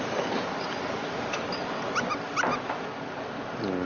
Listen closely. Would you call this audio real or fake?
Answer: real